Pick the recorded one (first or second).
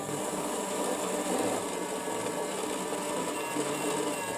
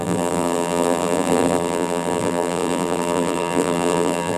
first